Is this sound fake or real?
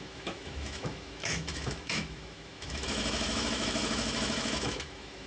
fake